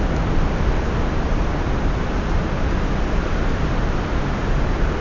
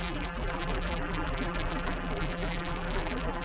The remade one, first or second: second